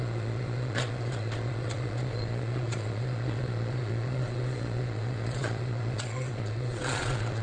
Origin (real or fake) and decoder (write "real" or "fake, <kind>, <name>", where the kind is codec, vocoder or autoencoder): fake, vocoder, Vocos